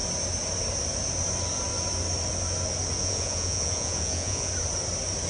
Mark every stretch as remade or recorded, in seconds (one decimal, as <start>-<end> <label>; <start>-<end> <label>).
0.0-3.0 recorded; 3.0-4.5 remade; 4.5-5.3 recorded